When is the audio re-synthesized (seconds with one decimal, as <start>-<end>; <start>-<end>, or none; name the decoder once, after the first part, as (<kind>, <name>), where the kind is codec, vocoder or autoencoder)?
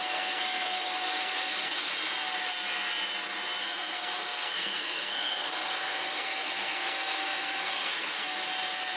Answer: 0.0-1.9 (codec, SNAC); 3.6-8.3